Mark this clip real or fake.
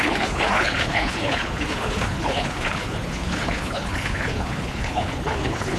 fake